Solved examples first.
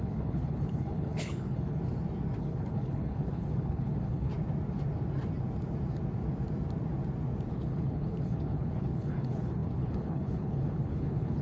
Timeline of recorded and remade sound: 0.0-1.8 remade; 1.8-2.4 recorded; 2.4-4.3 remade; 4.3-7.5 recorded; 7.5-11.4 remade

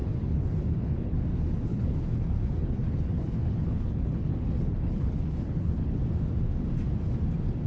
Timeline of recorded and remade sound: 0.0-1.2 remade; 1.2-1.7 recorded; 1.7-6.0 remade; 6.0-7.7 recorded

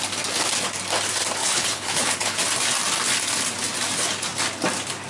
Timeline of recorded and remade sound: 0.0-1.4 recorded; 1.4-2.4 remade; 2.4-5.1 recorded

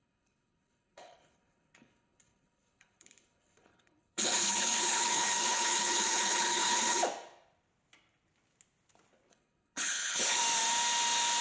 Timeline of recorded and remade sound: 0.0-7.0 remade; 7.0-9.3 recorded; 9.3-10.4 remade; 10.4-11.4 recorded

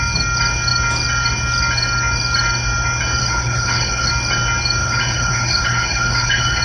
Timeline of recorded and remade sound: 0.0-3.2 recorded; 3.2-4.1 remade; 4.1-4.8 recorded; 4.8-6.6 remade